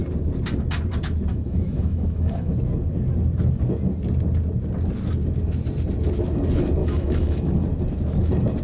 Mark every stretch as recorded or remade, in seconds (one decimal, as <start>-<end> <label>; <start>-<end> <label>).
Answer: 0.0-1.3 recorded; 1.3-2.5 remade; 2.5-6.8 recorded; 6.8-7.5 remade; 7.5-8.6 recorded